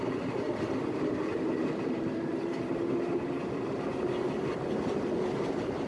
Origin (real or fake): real